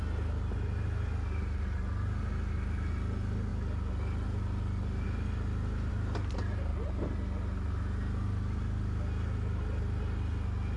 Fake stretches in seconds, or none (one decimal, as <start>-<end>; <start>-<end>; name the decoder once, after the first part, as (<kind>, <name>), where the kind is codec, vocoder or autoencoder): none